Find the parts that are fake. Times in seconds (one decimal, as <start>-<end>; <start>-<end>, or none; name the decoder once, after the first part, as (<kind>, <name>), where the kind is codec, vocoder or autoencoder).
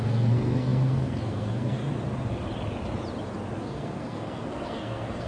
0.0-1.8 (codec, SNAC); 3.6-5.3